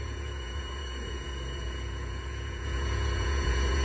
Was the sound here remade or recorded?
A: remade